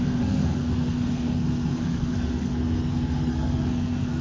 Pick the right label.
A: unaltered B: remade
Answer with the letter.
B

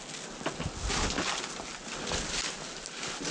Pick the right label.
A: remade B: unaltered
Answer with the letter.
B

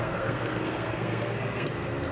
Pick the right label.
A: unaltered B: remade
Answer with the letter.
B